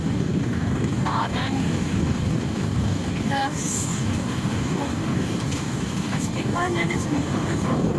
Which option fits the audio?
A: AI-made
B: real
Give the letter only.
A